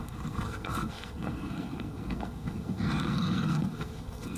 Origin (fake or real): fake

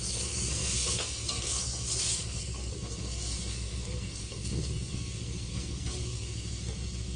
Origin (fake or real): fake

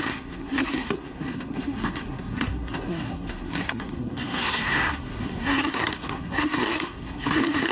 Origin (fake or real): fake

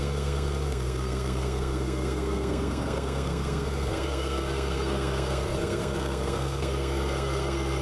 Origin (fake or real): fake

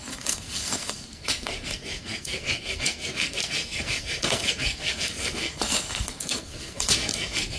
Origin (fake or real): fake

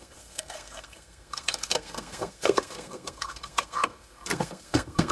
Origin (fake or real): fake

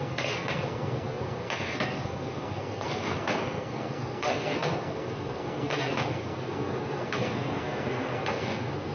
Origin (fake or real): fake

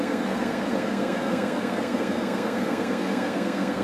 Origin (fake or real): fake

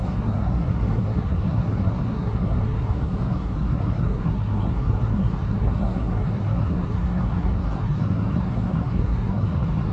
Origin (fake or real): fake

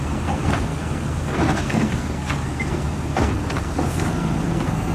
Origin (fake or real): fake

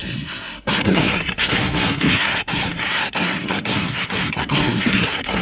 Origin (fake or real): fake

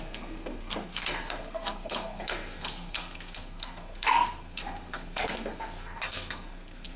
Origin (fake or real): fake